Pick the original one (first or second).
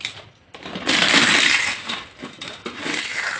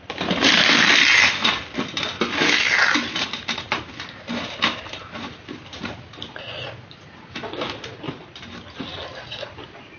second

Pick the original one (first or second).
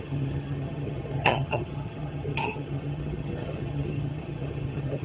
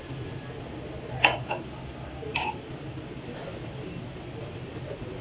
second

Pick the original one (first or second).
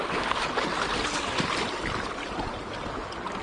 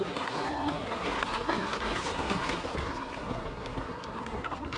first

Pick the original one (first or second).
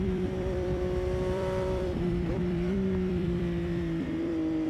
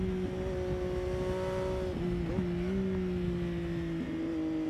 second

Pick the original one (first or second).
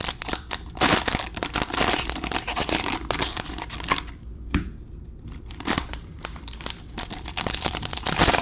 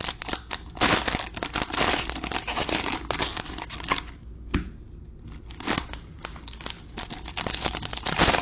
second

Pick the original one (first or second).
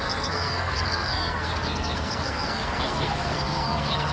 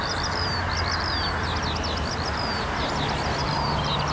second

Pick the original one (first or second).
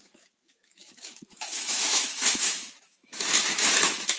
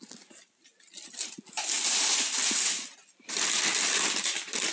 second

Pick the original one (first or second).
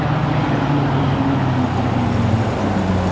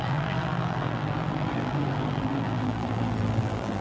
first